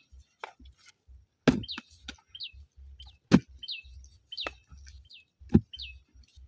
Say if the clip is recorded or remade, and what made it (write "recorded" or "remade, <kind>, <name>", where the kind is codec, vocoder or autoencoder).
recorded